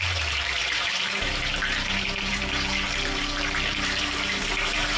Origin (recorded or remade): remade